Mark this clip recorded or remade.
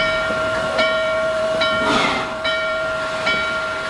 recorded